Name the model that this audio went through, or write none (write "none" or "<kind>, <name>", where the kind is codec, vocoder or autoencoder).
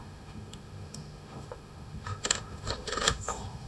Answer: autoencoder, DAC-VAE